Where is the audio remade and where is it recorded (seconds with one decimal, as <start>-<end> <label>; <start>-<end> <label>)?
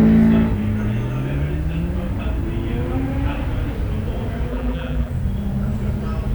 0.0-4.5 recorded; 4.5-5.1 remade; 5.1-6.3 recorded